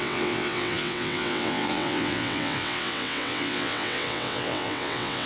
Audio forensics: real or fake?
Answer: fake